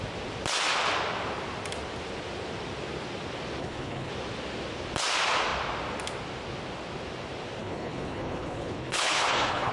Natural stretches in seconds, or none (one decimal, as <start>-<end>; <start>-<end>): 0.0-3.6; 4.1-7.6